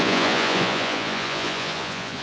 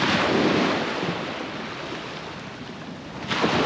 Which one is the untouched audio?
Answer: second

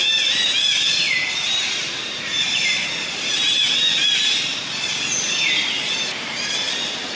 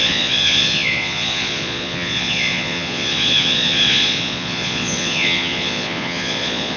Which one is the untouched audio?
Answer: first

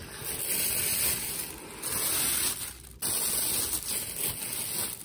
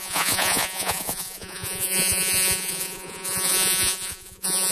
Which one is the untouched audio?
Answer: first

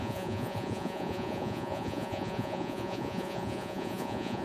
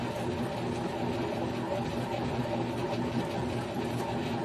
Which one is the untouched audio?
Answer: second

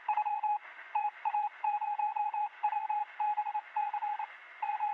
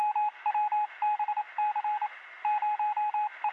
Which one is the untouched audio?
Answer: second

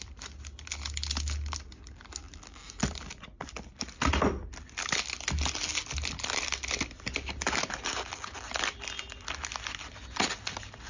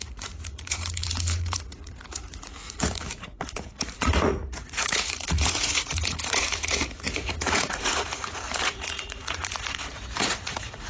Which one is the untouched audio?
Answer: first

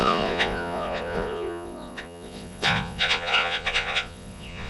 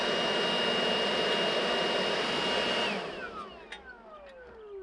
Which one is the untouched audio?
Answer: second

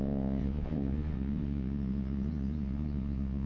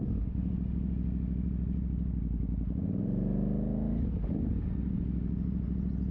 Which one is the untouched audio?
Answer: second